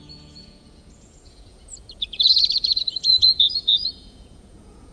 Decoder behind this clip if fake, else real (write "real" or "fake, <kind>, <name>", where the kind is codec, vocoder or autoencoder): fake, vocoder, Vocos